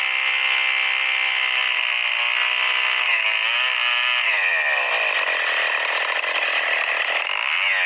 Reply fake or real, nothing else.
real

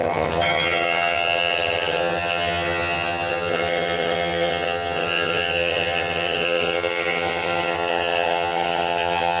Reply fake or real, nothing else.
fake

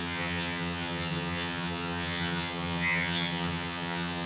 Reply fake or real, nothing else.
fake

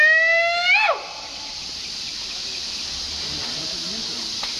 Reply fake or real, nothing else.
real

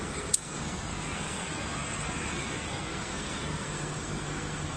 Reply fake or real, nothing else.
fake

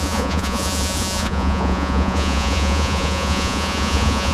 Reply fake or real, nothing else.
fake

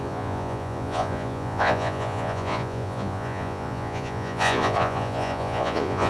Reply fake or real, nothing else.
fake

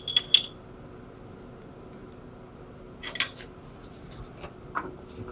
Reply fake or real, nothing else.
real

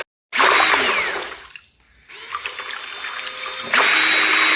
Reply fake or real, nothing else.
real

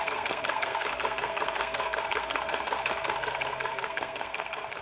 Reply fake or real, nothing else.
fake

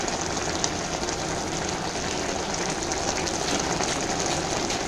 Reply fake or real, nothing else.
real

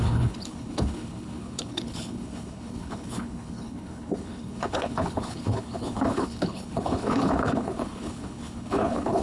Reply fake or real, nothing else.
fake